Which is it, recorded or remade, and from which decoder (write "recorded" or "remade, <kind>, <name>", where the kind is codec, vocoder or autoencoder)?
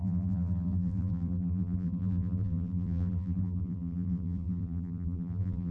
remade, vocoder, BigVGAN v2